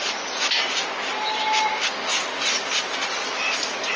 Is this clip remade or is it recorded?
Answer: recorded